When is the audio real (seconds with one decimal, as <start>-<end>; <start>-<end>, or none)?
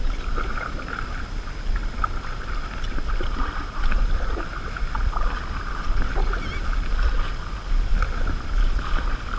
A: 0.0-1.8; 6.3-9.4